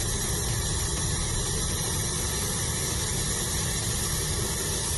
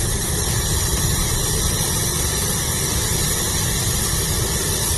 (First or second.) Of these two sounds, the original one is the first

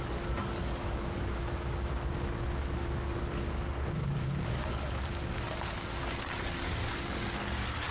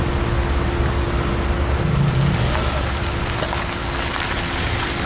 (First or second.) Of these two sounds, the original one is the second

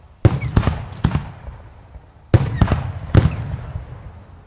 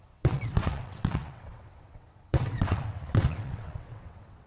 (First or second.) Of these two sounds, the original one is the first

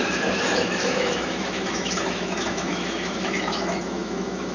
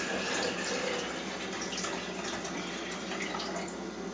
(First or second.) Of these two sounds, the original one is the second